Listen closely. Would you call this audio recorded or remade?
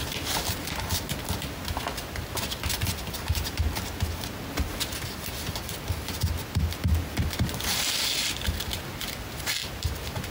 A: recorded